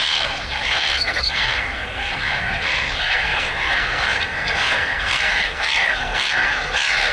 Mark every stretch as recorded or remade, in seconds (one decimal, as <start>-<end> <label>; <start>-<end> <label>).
0.0-7.1 remade